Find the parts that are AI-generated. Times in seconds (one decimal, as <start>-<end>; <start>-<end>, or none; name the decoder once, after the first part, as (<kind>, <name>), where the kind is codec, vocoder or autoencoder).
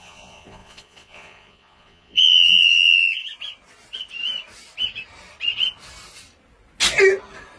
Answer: 0.0-3.2 (vocoder, Vocos)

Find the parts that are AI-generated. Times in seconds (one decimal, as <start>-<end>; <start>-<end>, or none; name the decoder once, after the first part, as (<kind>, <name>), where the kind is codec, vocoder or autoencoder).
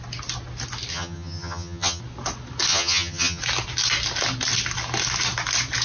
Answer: 0.9-2.0 (vocoder, HiFi-GAN); 2.7-3.4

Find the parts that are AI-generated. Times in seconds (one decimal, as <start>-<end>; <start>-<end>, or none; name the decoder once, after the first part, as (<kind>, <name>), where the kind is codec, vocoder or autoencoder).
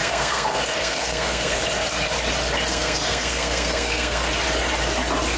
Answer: 0.0-1.6 (codec, SNAC); 2.7-4.3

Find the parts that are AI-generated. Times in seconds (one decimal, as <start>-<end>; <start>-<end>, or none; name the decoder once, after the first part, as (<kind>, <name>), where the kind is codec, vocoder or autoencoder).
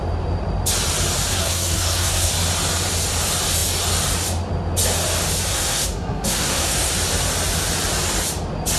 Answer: 1.3-2.3 (codec, SNAC); 5.5-6.9